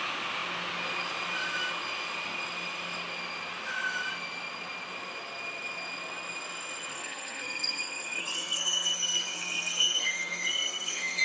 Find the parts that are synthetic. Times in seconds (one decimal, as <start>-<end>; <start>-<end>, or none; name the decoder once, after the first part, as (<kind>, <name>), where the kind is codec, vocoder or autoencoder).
6.9-11.2 (codec, SNAC)